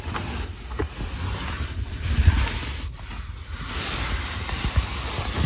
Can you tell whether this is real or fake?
real